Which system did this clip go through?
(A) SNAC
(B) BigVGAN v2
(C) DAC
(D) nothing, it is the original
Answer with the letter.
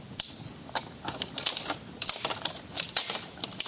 D